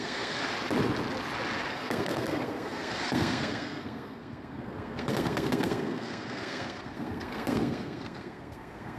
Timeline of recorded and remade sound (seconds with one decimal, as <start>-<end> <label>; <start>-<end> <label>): 0.0-0.4 remade; 0.4-1.7 recorded; 1.7-9.0 remade